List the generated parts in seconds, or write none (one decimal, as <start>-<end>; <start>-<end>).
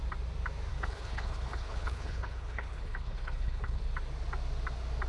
0.7-3.8